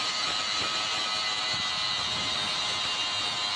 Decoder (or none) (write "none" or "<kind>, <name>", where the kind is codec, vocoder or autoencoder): none